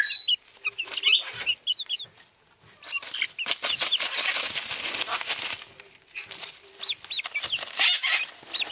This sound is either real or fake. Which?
real